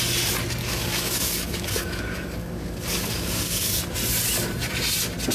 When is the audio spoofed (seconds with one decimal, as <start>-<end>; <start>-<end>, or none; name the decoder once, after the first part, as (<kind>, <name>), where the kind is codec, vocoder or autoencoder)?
0.6-3.8 (codec, DAC)